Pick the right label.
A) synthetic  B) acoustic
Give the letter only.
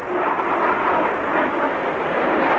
B